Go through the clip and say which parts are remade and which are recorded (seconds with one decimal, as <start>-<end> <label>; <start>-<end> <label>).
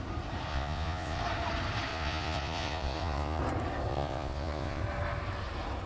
0.0-0.5 recorded; 0.5-1.2 remade; 1.2-1.9 recorded; 1.9-3.4 remade; 3.4-3.9 recorded; 3.9-4.8 remade; 4.8-5.9 recorded